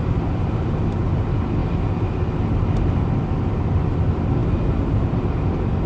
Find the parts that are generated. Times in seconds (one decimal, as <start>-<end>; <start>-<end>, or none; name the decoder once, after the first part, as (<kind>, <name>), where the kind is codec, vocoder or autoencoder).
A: none